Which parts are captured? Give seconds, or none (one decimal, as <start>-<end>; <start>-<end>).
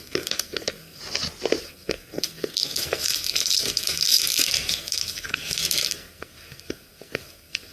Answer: 1.0-1.6